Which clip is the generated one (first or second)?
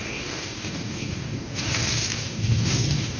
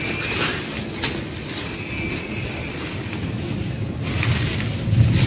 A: first